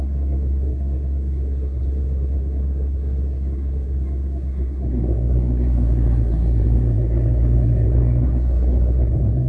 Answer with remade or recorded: remade